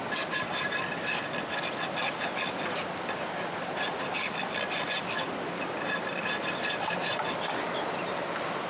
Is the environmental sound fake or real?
real